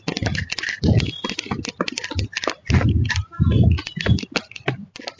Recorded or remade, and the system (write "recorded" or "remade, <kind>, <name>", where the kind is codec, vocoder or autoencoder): recorded